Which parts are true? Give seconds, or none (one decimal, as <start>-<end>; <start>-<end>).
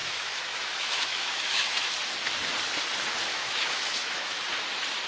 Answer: 1.9-3.3; 4.4-5.1